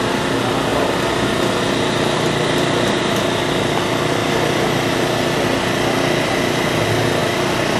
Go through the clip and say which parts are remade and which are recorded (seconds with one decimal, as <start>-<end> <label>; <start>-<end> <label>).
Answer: 0.0-0.7 recorded; 0.7-3.0 remade; 3.0-4.2 recorded; 4.2-5.3 remade; 5.3-7.8 recorded